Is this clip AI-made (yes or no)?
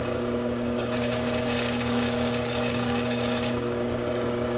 yes